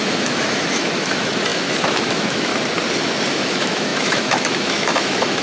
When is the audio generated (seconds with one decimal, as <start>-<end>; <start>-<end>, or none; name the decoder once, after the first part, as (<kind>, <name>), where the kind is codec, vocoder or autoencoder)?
0.0-2.5 (autoencoder, DAC-VAE); 3.3-5.4

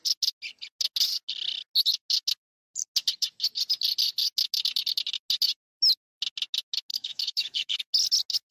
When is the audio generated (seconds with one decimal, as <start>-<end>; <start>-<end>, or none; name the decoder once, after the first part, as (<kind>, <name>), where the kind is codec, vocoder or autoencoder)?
6.9-7.8 (autoencoder, DAC-VAE)

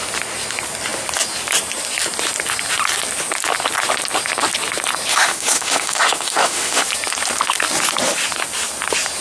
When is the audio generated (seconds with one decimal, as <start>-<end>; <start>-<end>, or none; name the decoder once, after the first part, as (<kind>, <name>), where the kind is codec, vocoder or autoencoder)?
5.1-6.8 (autoencoder, DAC-VAE)